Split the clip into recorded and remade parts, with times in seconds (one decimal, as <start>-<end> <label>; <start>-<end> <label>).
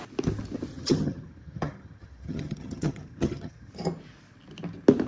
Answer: 0.0-0.7 recorded; 0.7-3.7 remade; 3.7-5.1 recorded